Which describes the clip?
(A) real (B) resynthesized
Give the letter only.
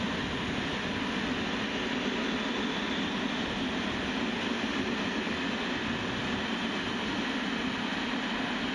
A